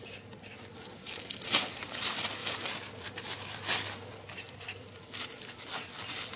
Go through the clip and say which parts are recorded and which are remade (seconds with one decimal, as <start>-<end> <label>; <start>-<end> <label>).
0.0-2.4 recorded; 2.4-5.1 remade; 5.1-6.4 recorded